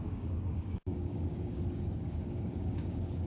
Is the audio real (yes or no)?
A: no